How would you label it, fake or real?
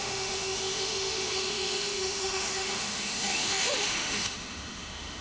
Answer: fake